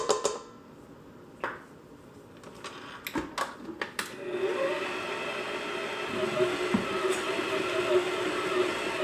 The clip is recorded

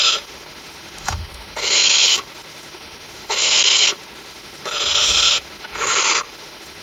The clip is remade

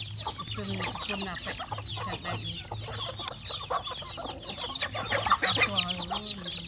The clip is recorded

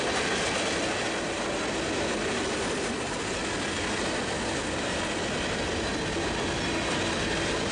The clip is recorded